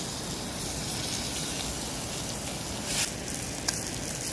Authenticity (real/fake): real